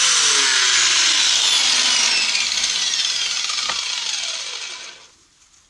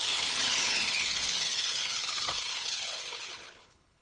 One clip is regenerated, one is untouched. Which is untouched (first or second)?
first